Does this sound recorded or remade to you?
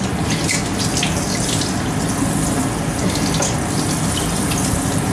recorded